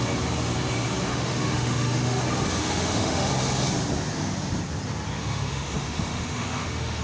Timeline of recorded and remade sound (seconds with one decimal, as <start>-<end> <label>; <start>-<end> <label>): 0.0-1.1 recorded; 1.1-2.2 remade; 2.2-2.6 recorded; 2.6-3.3 remade; 3.3-5.2 recorded; 5.2-7.0 remade